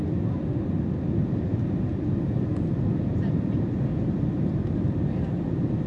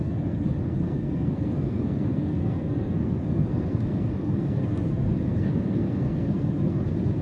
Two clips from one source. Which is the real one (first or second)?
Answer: first